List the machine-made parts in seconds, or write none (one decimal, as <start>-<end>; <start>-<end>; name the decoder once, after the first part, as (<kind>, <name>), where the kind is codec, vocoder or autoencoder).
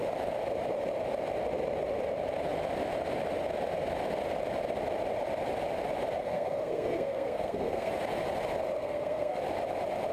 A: 6.2-7.9 (codec, SNAC); 8.8-9.4